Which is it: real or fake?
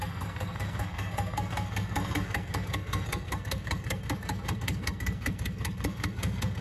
fake